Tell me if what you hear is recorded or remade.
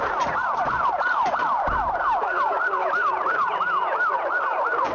recorded